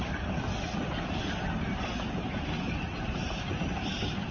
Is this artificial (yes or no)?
no